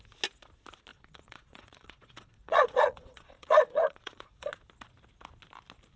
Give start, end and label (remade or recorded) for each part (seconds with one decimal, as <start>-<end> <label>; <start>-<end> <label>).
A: 0.0-0.9 recorded; 0.9-4.5 remade; 4.5-6.0 recorded